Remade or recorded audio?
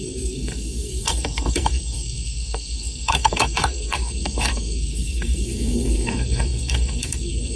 remade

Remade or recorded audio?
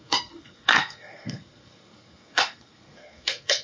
remade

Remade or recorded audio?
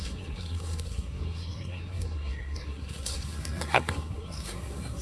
remade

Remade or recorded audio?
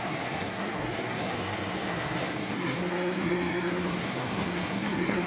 remade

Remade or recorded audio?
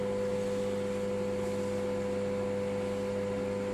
recorded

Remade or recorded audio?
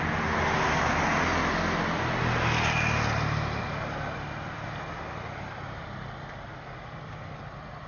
recorded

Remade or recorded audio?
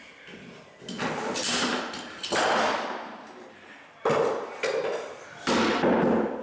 recorded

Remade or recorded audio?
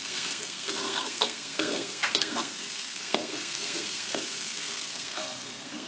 remade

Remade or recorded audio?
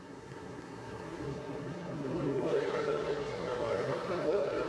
remade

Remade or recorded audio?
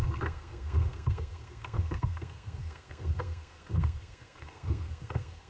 remade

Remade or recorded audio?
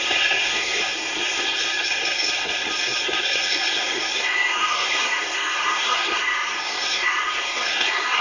remade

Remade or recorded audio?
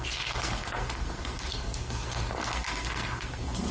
remade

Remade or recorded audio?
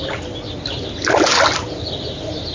recorded